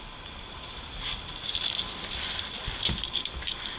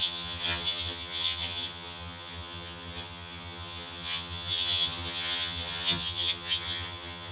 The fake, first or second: second